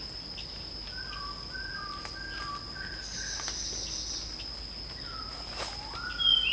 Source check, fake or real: real